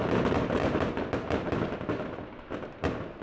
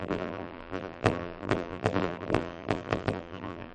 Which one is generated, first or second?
second